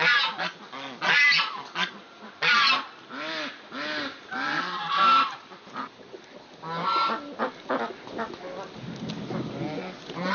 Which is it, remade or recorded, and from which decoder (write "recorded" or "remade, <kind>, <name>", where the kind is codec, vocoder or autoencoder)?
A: recorded